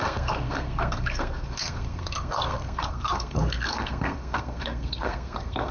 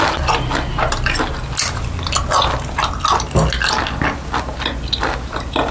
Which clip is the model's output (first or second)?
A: first